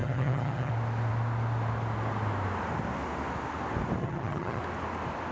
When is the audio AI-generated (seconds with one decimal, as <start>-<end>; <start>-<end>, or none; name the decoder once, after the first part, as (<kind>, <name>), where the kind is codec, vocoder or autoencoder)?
0.0-0.7 (vocoder, HiFi-GAN); 4.0-4.6